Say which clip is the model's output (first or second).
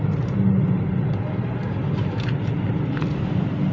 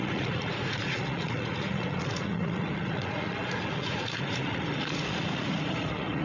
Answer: second